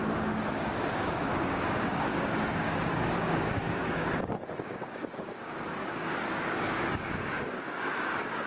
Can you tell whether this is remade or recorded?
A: remade